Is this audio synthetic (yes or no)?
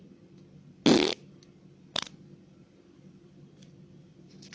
no